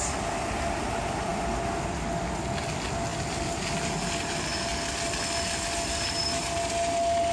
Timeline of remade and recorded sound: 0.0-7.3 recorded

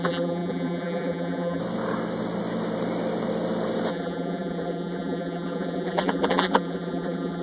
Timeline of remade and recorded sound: 0.0-1.6 remade; 1.6-3.9 recorded; 3.9-7.4 remade

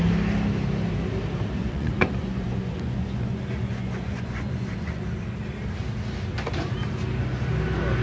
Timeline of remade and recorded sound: 0.0-1.6 recorded; 1.6-5.0 remade; 5.0-8.0 recorded

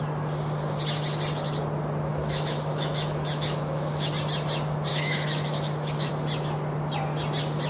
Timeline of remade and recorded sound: 0.0-2.1 recorded; 2.1-4.1 remade; 4.1-4.9 recorded; 4.9-6.1 remade; 6.1-7.7 recorded